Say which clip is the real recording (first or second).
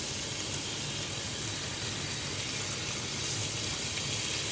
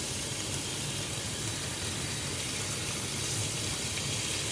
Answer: first